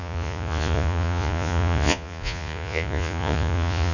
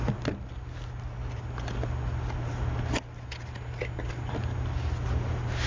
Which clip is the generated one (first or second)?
first